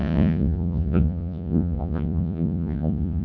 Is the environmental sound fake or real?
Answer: fake